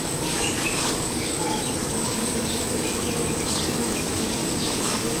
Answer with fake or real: fake